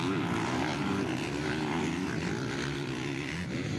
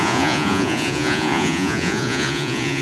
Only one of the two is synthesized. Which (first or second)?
second